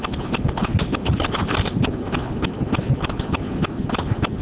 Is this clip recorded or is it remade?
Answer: recorded